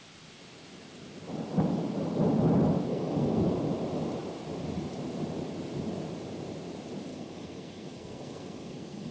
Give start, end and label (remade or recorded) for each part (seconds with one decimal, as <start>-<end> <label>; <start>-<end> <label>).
0.0-2.9 recorded; 2.9-3.4 remade; 3.4-7.1 recorded; 7.1-9.1 remade